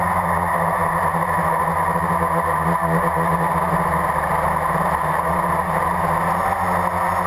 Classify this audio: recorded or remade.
recorded